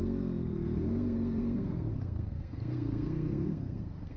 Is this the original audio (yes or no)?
no